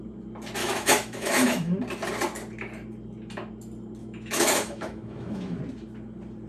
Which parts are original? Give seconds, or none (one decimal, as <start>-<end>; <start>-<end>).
0.0-0.6; 1.8-4.0; 5.6-6.5